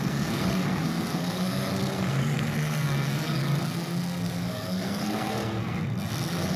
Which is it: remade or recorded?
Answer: remade